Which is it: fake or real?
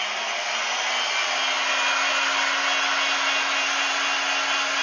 real